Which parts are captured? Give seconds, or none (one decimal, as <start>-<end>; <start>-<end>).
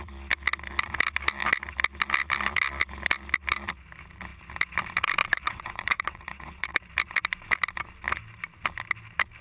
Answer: 0.0-5.2; 6.8-9.4